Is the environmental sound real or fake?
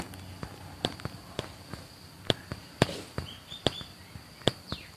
real